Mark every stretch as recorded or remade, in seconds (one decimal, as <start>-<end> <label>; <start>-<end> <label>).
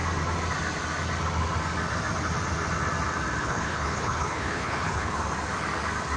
0.0-3.4 recorded; 3.4-5.2 remade; 5.2-6.2 recorded